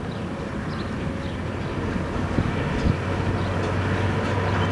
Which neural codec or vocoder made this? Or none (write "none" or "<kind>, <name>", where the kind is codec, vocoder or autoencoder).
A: none